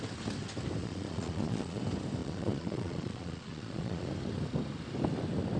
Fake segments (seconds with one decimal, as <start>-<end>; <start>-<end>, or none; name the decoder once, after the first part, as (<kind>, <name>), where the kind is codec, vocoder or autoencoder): 0.8-1.8 (vocoder, Vocos); 2.2-4.1